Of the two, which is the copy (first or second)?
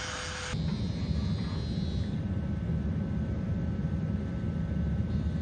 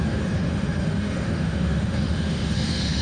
second